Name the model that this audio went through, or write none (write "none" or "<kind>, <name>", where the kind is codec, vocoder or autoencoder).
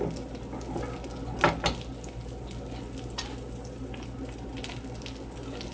none